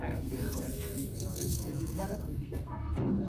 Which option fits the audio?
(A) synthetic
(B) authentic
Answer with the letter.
A